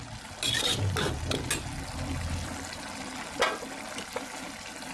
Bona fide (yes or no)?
yes